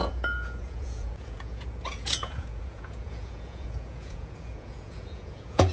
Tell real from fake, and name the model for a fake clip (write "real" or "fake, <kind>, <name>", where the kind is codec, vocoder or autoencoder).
fake, vocoder, Vocos